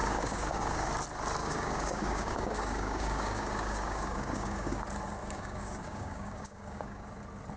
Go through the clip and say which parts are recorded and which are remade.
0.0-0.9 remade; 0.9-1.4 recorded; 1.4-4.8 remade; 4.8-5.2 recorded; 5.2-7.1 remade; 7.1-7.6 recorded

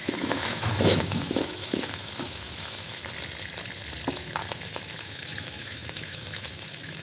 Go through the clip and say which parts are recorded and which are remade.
0.0-3.0 remade; 3.0-4.1 recorded; 4.1-7.0 remade

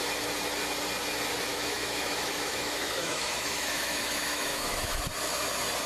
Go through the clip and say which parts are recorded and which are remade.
0.0-1.5 recorded; 1.5-5.0 remade; 5.0-5.9 recorded

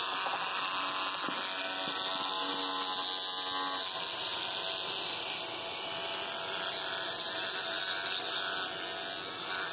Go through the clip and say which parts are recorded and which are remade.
0.0-9.7 recorded

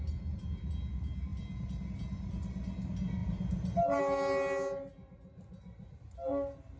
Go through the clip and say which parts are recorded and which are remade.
0.0-6.8 recorded

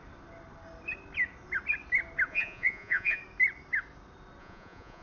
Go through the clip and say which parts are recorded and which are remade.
0.0-2.3 recorded; 2.3-3.2 remade; 3.2-4.4 recorded; 4.4-5.0 remade

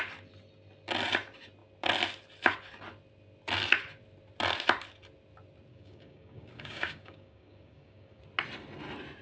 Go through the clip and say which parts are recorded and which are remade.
0.0-5.7 recorded; 5.7-8.2 remade; 8.2-9.2 recorded

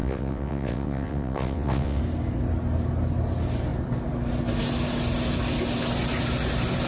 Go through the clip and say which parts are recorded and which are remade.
0.0-2.0 remade; 2.0-6.9 recorded